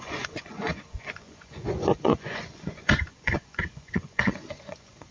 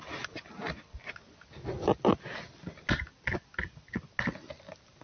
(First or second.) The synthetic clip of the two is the first